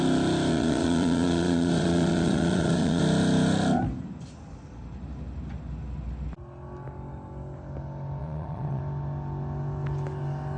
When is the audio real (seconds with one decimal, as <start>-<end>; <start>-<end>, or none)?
0.0-0.5; 3.0-8.2; 8.8-10.6